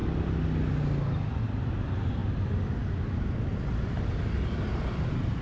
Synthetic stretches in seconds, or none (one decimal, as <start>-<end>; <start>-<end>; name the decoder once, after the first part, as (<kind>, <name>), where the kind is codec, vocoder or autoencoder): none

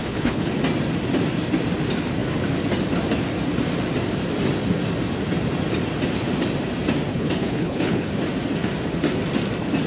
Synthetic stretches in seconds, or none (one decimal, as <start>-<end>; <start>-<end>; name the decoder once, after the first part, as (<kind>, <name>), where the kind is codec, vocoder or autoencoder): 0.0-0.5 (codec, HILCodec); 7.1-8.1

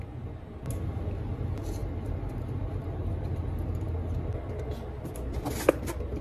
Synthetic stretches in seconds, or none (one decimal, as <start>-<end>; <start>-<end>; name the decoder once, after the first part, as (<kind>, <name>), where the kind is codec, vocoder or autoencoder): none

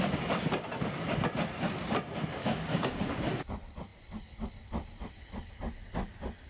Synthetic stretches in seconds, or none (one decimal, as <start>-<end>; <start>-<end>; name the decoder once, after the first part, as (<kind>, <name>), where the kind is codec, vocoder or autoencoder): 2.4-3.4 (codec, DAC)

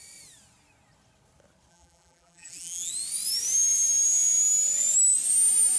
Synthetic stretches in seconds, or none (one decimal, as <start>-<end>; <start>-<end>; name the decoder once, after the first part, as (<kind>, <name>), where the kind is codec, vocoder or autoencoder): 1.7-2.9 (vocoder, BigVGAN v2)

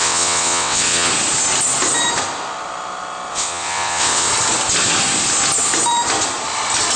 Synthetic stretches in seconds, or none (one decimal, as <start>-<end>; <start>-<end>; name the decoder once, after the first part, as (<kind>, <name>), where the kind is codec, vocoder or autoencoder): 0.0-1.1 (vocoder, WaveNeXt); 3.3-4.3